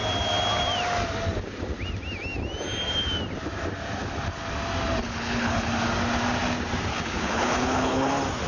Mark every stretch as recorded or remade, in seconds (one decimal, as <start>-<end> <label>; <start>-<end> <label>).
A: 0.0-5.0 recorded; 5.0-5.7 remade; 5.7-6.9 recorded; 6.9-8.1 remade; 8.1-8.5 recorded